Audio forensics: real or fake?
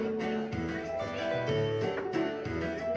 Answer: real